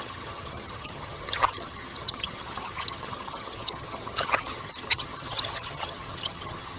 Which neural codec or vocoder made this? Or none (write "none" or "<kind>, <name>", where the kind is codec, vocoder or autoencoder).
vocoder, HiFi-GAN